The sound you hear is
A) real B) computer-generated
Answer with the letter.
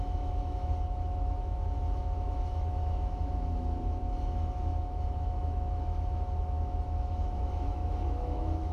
B